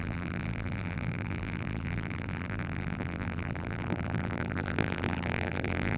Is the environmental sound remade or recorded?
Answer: remade